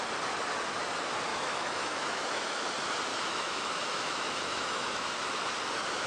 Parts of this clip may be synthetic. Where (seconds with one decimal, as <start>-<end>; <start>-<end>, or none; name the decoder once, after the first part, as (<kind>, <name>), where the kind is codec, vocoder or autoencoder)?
1.3-2.7 (autoencoder, DAC-VAE); 3.1-5.4

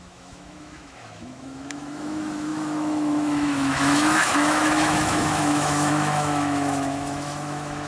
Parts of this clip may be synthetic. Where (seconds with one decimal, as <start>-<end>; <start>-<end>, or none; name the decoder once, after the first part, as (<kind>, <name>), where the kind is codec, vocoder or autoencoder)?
0.0-7.9 (autoencoder, DAC-VAE)

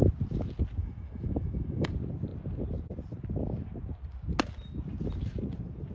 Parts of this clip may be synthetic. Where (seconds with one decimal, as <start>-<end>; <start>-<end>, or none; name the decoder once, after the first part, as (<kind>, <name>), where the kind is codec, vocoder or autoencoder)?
0.8-1.9 (autoencoder, DAC-VAE)

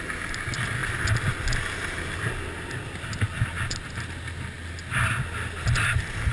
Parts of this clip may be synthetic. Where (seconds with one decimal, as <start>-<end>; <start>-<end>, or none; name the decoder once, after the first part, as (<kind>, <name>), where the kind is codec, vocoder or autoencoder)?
none

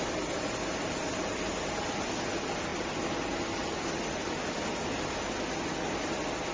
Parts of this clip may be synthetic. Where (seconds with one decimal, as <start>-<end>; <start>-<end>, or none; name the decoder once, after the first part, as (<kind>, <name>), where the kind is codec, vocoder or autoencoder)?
none

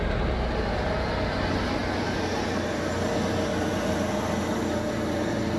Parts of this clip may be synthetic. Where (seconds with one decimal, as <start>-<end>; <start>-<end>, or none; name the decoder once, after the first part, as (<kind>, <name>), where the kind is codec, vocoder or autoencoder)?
none